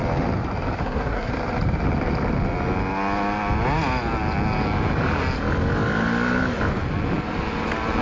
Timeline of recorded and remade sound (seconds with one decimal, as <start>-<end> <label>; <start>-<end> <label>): 0.0-0.8 recorded; 0.8-1.3 remade; 1.3-8.0 recorded